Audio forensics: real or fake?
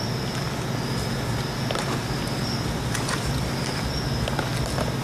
real